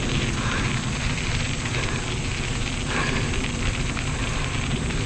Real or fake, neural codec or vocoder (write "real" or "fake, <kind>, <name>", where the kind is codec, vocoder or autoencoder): real